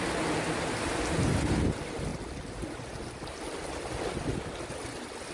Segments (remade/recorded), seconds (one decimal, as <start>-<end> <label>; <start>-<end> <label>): 0.0-5.3 recorded